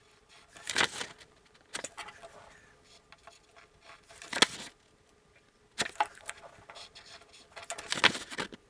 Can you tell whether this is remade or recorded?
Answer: recorded